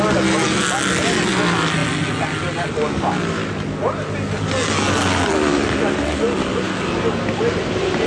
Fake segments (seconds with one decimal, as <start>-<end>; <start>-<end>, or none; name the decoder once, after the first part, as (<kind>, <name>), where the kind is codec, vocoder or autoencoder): none